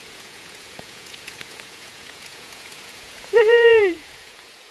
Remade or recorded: remade